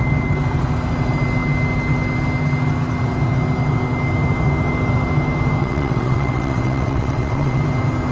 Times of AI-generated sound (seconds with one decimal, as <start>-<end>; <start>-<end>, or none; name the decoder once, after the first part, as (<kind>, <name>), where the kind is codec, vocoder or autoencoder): 5.6-7.6 (vocoder, WaveNeXt)

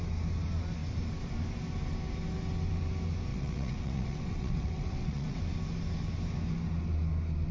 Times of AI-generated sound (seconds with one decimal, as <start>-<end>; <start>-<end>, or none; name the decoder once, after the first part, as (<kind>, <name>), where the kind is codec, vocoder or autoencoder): 3.3-5.4 (vocoder, WaveNeXt)

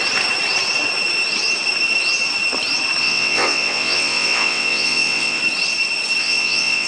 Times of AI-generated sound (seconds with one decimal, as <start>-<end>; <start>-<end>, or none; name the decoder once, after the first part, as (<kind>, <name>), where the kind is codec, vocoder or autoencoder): 3.0-5.4 (vocoder, WaveNeXt); 6.2-6.9